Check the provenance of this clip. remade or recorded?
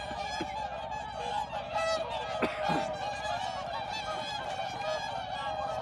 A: recorded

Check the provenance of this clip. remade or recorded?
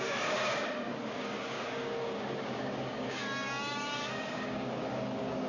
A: remade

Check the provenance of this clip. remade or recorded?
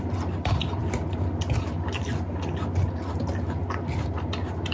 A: recorded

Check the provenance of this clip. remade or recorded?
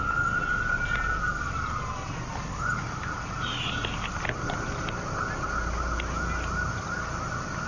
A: recorded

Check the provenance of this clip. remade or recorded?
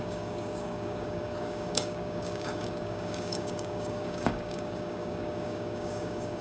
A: remade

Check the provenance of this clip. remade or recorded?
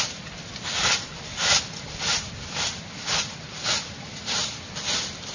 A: recorded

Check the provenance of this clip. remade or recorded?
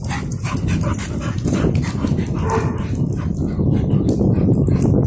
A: recorded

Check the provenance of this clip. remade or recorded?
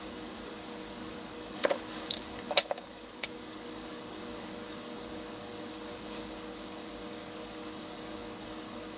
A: remade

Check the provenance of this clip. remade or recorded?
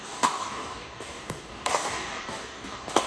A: remade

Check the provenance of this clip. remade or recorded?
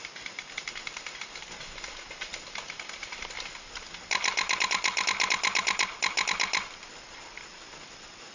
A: recorded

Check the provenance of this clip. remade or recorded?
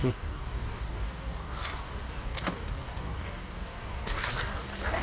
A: remade